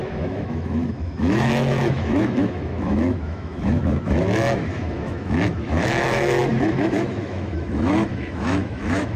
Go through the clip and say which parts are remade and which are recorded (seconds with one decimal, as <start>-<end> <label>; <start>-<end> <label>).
0.0-9.2 remade